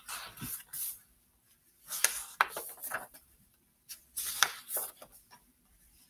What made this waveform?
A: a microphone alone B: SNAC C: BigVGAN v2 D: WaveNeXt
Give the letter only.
C